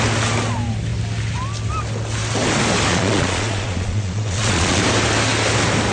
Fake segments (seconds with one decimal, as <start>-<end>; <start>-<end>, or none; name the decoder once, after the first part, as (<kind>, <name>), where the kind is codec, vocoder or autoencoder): 2.9-4.8 (vocoder, Vocos)